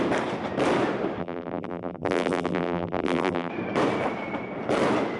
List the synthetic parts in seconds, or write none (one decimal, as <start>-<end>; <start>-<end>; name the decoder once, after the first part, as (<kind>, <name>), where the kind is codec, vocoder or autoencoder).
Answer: 1.2-3.5 (vocoder, BigVGAN v2)